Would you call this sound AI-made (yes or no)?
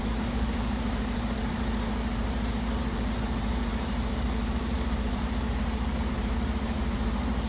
yes